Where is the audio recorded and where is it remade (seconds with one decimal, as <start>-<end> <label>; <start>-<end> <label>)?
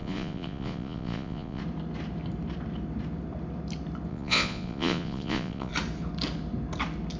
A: 0.0-1.6 remade; 1.6-4.1 recorded; 4.1-5.7 remade; 5.7-7.2 recorded